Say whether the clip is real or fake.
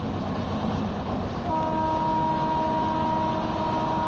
real